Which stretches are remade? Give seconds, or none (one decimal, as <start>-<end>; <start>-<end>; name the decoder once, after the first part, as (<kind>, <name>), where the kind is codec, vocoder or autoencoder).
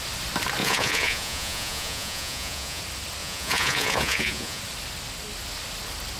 0.6-2.8 (vocoder, Vocos); 3.2-4.6